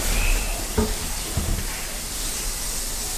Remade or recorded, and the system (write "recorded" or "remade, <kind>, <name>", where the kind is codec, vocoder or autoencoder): recorded